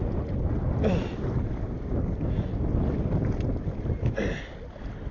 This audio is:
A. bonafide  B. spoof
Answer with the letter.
A